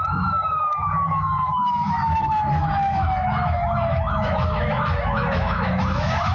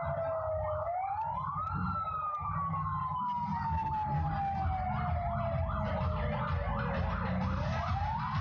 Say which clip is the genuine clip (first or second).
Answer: second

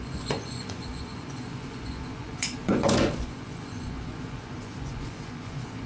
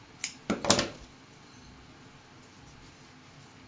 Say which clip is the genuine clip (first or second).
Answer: second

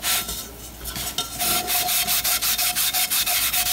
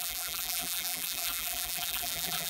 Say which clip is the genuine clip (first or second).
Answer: first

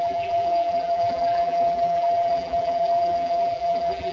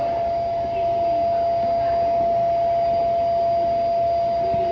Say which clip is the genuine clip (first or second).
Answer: second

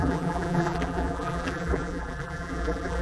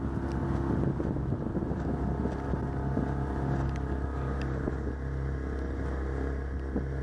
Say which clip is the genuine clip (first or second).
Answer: second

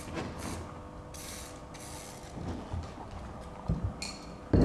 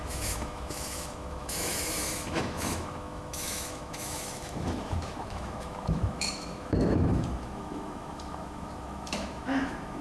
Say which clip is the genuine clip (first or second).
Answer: first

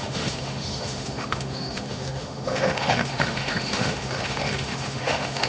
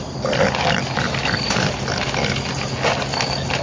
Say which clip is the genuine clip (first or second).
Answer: second